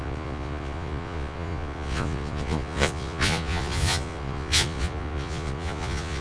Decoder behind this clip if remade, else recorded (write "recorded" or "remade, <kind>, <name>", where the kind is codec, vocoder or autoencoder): remade, vocoder, Vocos